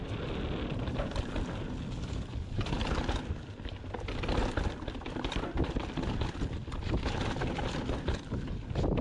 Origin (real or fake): real